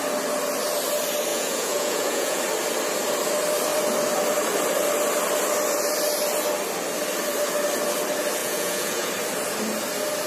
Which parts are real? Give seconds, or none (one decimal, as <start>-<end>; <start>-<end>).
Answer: 0.0-1.3; 2.4-8.4; 9.1-10.3